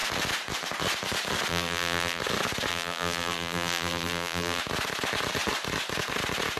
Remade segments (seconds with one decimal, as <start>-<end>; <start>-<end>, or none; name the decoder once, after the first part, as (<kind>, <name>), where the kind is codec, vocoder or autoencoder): 1.5-2.2 (vocoder, BigVGAN v2); 2.7-4.6